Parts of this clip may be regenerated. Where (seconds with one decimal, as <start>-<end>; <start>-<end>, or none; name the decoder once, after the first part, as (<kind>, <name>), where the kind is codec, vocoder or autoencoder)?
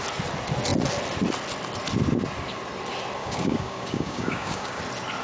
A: 3.2-4.8 (codec, DAC)